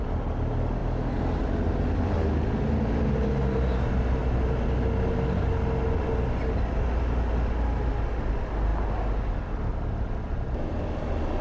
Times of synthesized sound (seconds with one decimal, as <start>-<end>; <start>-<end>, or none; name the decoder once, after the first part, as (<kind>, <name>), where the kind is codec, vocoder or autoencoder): none